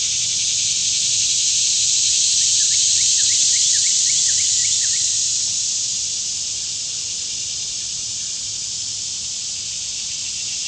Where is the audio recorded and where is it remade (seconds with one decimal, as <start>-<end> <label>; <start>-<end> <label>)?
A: 0.0-0.8 recorded; 0.8-1.9 remade; 1.9-10.7 recorded